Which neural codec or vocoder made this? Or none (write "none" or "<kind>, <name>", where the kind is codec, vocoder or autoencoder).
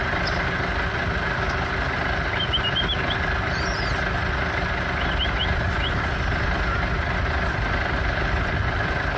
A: none